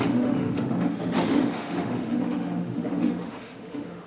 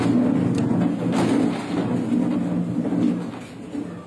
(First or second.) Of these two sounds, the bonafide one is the second